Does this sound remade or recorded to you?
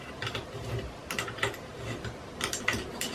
recorded